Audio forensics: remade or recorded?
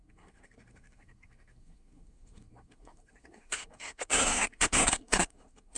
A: remade